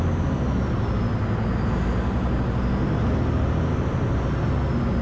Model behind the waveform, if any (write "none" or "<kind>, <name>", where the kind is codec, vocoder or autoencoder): none